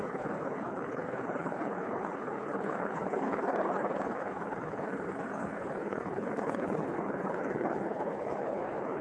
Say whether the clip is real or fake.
fake